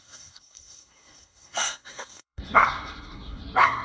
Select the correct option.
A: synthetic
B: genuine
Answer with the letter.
A